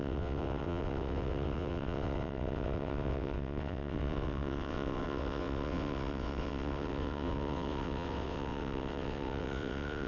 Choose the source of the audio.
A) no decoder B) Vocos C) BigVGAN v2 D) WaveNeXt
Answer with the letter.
D